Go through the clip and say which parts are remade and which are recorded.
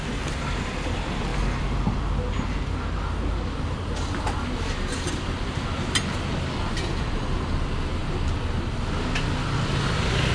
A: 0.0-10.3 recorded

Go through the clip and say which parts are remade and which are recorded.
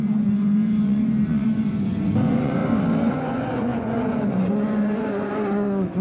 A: 0.0-2.6 remade; 2.6-3.1 recorded; 3.1-6.0 remade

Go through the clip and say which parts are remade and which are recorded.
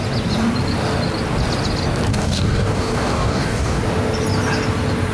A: 0.0-2.1 recorded; 2.1-3.8 remade; 3.8-5.1 recorded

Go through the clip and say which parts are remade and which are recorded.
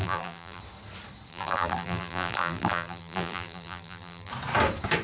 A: 0.0-0.6 remade; 0.6-1.3 recorded; 1.3-4.3 remade; 4.3-5.0 recorded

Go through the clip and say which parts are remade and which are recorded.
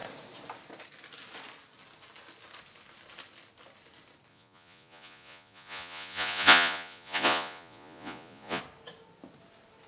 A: 0.0-4.3 recorded; 4.3-8.6 remade; 8.6-9.9 recorded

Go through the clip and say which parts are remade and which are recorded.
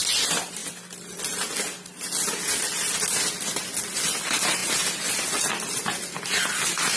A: 0.0-7.0 recorded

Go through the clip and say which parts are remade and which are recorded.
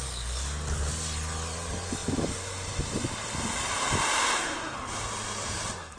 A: 0.0-6.0 recorded